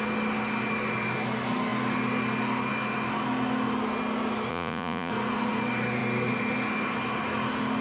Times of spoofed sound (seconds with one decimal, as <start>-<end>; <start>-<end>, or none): 4.5-5.1